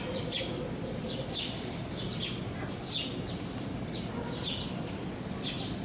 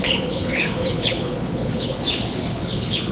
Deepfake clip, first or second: second